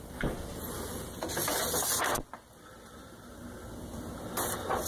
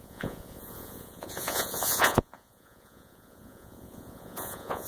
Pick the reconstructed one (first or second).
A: second